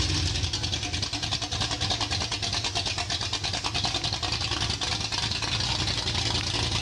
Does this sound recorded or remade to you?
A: recorded